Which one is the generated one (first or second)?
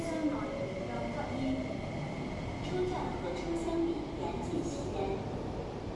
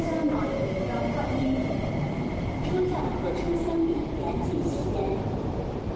second